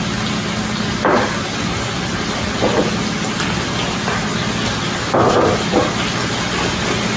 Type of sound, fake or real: real